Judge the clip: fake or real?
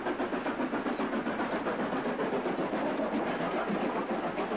real